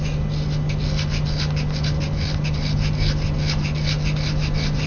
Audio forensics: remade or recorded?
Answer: recorded